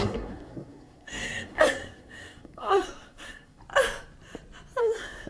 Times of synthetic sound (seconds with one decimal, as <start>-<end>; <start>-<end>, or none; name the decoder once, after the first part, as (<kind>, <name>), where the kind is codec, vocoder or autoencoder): 0.0-3.6 (codec, SNAC); 4.8-5.3